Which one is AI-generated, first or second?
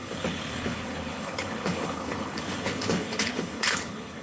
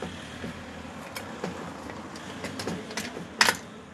first